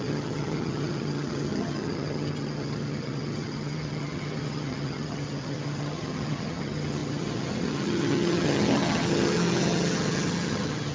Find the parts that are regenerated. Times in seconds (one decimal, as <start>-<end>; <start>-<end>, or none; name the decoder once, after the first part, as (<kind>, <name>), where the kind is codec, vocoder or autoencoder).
0.0-10.9 (vocoder, HiFi-GAN)